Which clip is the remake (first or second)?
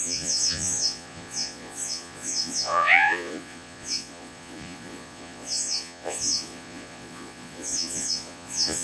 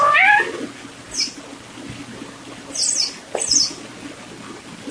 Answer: first